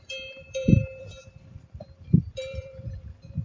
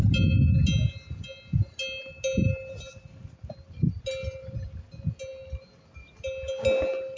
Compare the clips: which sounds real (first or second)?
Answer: second